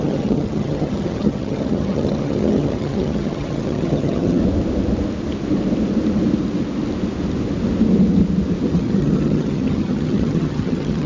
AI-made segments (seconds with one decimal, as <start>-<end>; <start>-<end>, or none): 0.0-4.4; 8.7-11.1